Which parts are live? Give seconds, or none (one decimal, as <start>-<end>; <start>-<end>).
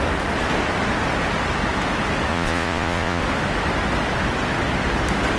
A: 0.0-2.3; 3.2-5.4